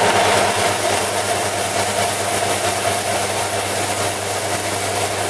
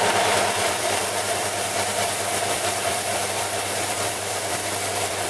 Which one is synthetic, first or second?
second